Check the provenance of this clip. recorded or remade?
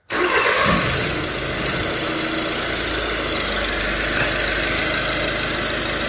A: recorded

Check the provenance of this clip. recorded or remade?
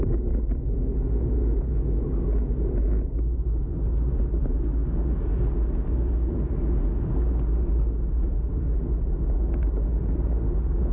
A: recorded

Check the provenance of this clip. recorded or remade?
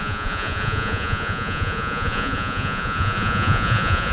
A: remade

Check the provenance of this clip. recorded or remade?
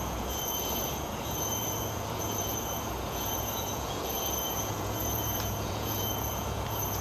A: remade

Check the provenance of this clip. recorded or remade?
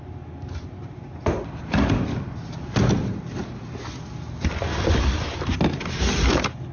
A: recorded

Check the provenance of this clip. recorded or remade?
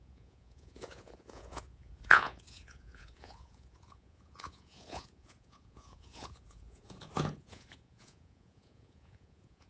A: remade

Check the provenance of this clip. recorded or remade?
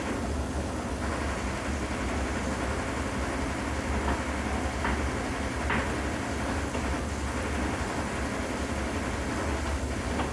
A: recorded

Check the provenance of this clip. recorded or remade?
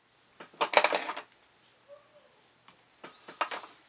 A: recorded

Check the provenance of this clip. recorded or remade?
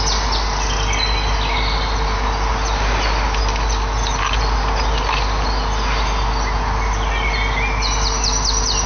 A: recorded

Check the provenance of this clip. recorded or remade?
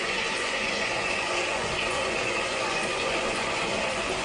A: remade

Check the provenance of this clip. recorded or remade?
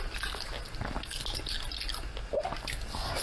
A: recorded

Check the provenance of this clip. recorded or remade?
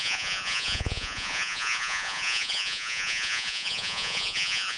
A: remade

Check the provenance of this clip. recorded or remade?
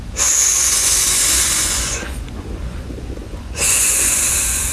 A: remade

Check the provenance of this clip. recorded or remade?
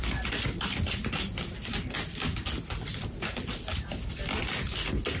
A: recorded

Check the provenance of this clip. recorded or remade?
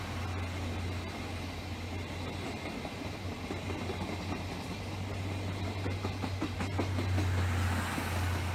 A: recorded